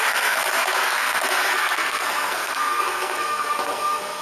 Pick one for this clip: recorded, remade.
remade